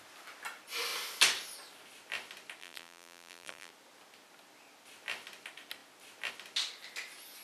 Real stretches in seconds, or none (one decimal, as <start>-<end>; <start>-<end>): 0.0-2.6; 3.7-7.4